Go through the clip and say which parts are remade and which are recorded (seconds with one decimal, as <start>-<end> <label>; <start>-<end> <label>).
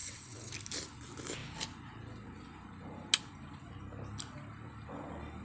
0.0-0.5 remade; 0.5-5.4 recorded